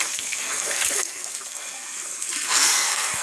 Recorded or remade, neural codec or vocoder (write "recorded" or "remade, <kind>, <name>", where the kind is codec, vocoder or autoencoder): remade, codec, SNAC